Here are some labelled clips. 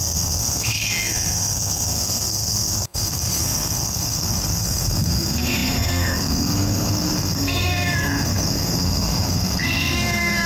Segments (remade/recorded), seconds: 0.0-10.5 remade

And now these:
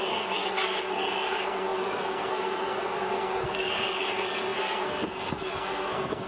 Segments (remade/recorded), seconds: 0.0-6.3 remade